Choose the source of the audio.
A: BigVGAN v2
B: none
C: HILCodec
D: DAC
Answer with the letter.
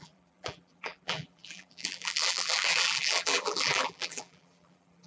A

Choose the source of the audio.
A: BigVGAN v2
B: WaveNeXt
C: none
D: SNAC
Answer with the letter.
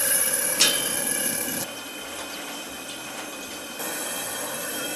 C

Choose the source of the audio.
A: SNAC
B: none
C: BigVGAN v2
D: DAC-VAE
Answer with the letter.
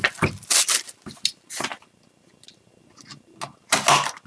B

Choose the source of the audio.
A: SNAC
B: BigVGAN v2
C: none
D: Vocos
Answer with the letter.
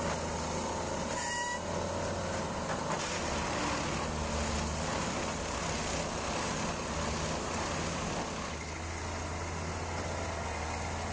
C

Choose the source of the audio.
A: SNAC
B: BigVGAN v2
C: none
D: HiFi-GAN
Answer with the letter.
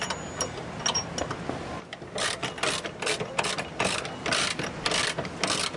C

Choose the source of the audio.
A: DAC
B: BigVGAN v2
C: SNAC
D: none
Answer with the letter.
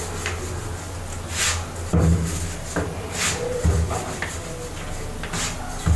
D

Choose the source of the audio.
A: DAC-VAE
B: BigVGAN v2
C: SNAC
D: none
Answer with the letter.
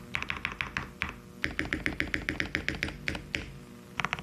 D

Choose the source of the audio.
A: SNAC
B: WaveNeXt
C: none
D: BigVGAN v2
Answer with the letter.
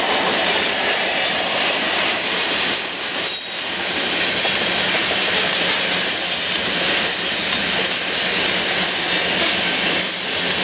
C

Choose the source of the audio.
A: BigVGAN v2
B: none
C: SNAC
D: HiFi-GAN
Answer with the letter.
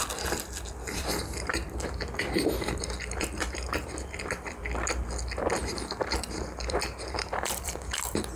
A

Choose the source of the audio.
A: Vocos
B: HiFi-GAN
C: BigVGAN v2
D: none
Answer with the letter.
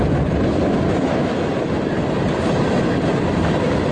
D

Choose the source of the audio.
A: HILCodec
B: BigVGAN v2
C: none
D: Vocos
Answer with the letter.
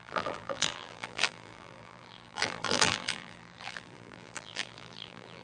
B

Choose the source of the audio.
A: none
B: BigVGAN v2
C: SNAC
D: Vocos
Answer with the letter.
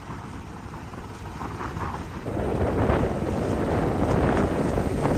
A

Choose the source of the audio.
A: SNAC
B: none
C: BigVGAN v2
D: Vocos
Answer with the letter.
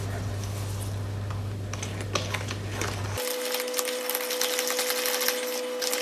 B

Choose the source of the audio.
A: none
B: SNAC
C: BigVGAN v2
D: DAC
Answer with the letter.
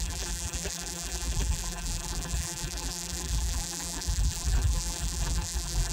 C